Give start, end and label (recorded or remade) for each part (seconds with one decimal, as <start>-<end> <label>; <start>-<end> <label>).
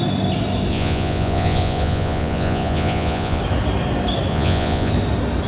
0.0-0.7 recorded; 0.7-3.4 remade; 3.4-4.3 recorded; 4.3-4.9 remade; 4.9-5.5 recorded